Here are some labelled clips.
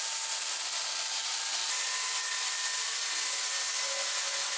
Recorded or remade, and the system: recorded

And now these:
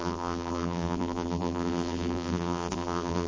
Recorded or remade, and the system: remade, vocoder, BigVGAN v2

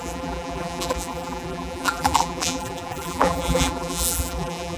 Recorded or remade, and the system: remade, vocoder, BigVGAN v2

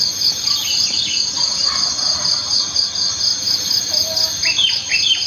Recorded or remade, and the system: recorded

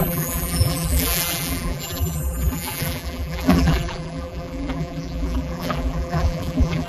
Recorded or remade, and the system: remade, vocoder, BigVGAN v2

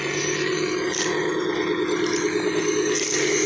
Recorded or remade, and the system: recorded